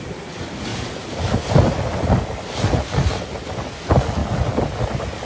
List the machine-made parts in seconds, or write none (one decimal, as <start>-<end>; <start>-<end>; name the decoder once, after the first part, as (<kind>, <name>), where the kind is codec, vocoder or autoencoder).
none